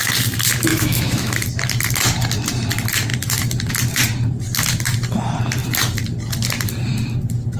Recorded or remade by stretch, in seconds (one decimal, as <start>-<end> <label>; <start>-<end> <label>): 0.0-0.7 recorded; 0.7-1.3 remade; 1.3-7.6 recorded